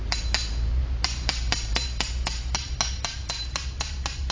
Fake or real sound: real